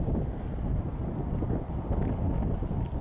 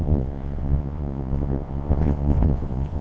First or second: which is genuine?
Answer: first